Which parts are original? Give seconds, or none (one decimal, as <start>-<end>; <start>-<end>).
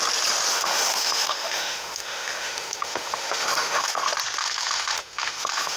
0.0-0.5; 4.0-4.4